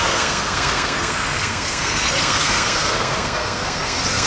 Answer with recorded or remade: remade